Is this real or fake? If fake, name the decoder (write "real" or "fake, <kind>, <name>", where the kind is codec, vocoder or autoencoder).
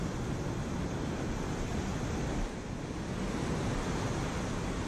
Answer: real